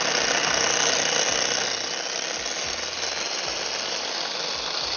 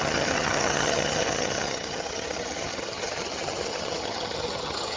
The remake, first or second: second